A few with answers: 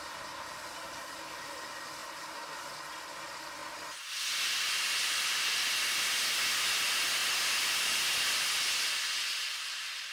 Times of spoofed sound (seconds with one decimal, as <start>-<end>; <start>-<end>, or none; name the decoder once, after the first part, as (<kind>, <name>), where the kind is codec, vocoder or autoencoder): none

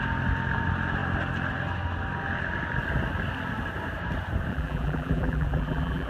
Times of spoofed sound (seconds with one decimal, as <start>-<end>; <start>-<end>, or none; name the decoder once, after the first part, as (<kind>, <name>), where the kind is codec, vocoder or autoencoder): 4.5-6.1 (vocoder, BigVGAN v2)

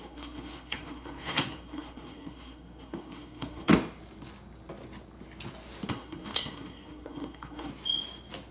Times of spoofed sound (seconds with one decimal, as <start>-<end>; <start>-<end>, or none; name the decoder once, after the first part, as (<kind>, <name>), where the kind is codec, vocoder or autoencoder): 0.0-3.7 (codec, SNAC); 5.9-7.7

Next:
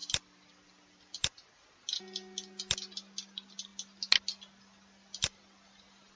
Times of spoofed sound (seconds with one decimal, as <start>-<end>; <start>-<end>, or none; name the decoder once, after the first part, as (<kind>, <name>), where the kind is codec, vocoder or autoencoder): none